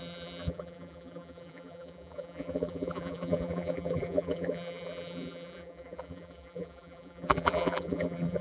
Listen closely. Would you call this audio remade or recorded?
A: remade